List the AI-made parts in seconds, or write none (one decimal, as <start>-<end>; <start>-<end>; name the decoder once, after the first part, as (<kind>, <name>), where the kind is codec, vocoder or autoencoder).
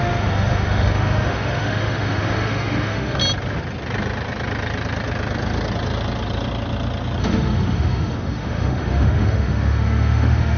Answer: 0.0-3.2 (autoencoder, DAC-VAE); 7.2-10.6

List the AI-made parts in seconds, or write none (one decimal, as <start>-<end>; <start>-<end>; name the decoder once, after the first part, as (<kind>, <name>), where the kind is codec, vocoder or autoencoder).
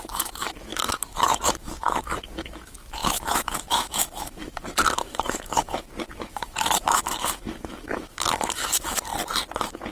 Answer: 0.0-9.1 (autoencoder, DAC-VAE)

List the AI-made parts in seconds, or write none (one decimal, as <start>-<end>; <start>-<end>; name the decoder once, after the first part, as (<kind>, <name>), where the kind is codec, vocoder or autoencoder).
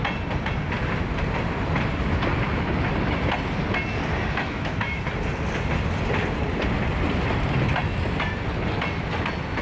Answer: 4.4-5.0 (autoencoder, DAC-VAE)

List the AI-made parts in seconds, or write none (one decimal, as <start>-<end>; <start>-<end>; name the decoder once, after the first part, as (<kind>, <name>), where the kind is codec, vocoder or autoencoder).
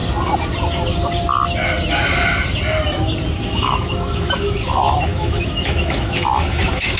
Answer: 3.3-7.0 (autoencoder, DAC-VAE)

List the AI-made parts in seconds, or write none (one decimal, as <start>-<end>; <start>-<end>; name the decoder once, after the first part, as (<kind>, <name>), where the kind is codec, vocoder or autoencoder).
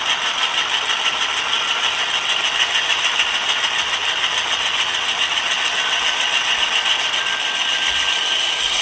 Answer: none